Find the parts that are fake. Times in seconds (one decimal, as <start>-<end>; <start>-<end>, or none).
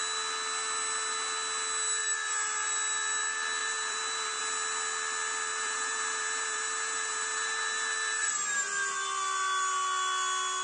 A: 3.6-4.4; 5.5-8.3